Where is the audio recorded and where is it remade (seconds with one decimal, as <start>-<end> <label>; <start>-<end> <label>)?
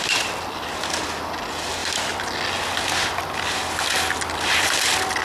0.0-5.2 recorded